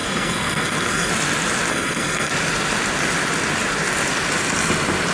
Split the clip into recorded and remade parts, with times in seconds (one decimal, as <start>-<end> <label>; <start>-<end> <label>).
0.0-1.1 remade; 1.1-1.7 recorded; 1.7-2.3 remade; 2.3-5.1 recorded